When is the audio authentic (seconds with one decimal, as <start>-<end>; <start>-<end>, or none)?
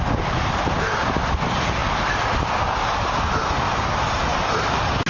0.0-5.1